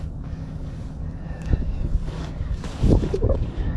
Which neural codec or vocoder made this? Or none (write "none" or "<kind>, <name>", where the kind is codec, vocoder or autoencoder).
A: codec, DAC